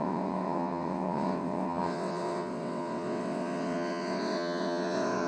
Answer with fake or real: fake